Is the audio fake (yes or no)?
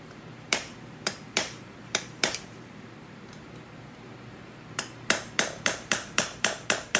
yes